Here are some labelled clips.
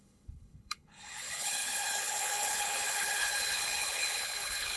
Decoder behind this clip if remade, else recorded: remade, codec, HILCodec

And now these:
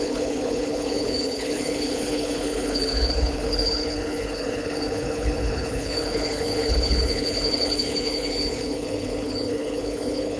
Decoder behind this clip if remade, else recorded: remade, codec, HILCodec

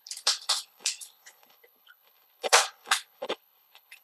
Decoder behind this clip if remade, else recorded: remade, codec, HILCodec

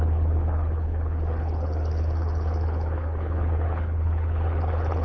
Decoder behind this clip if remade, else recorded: remade, codec, HILCodec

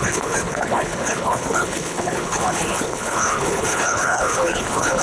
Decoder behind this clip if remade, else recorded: remade, codec, HILCodec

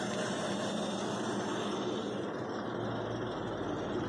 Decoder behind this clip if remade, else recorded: recorded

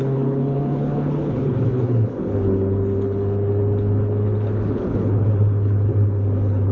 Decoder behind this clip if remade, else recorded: remade, codec, HILCodec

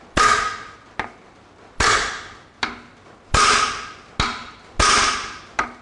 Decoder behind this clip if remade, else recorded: recorded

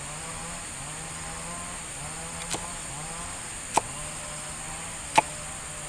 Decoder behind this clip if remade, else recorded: recorded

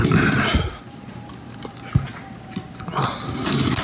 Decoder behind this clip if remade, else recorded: recorded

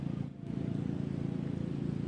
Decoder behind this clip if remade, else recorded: recorded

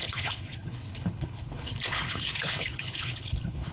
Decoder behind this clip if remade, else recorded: remade, codec, HILCodec